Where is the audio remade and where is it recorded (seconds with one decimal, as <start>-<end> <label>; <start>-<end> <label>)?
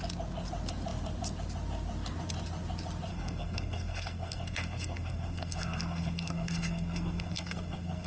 0.0-3.1 recorded; 3.1-8.1 remade